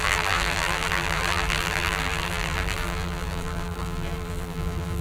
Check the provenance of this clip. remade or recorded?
remade